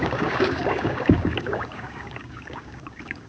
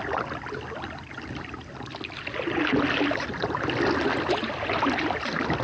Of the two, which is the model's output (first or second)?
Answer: first